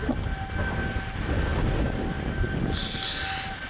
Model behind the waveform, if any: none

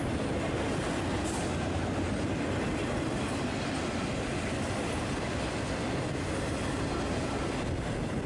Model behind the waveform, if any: none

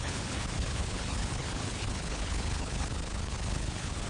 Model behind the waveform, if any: codec, HILCodec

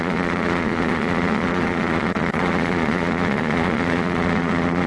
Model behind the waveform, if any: vocoder, Vocos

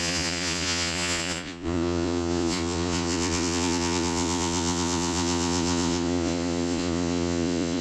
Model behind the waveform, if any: vocoder, Vocos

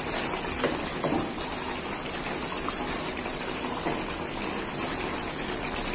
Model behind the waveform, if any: none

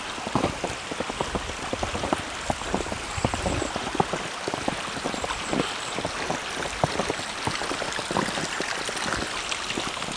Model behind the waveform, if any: none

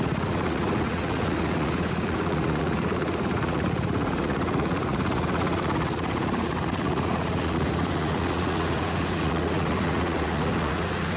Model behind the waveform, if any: vocoder, Vocos